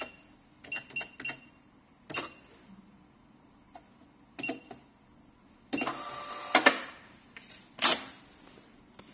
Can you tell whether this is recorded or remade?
recorded